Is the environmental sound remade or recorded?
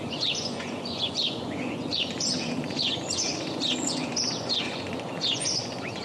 remade